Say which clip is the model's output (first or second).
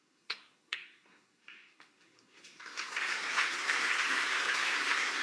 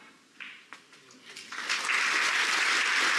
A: first